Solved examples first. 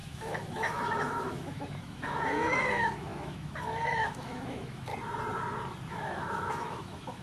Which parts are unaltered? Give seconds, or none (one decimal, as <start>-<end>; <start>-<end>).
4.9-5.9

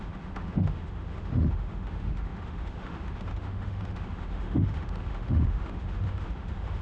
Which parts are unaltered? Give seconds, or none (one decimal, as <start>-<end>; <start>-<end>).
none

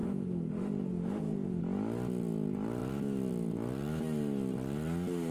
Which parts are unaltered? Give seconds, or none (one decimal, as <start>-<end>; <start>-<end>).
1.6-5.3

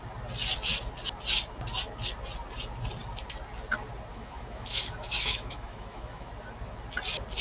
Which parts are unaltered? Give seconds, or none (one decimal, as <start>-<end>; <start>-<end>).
0.0-4.1; 6.3-7.4